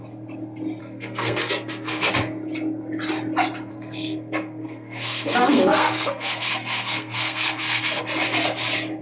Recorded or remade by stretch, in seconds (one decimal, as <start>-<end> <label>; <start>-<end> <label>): 0.0-0.8 recorded; 0.8-2.1 remade; 2.1-3.7 recorded; 3.7-8.0 remade; 8.0-9.0 recorded